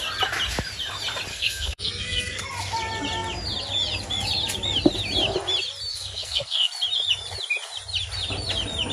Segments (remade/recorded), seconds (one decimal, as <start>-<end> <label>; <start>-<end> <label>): 0.0-1.3 recorded; 1.3-2.4 remade; 2.4-5.9 recorded; 5.9-6.7 remade; 6.7-8.9 recorded